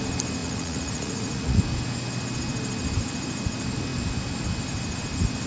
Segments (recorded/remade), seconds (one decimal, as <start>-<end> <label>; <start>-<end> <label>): 0.0-0.4 recorded; 0.4-1.6 remade; 1.6-5.5 recorded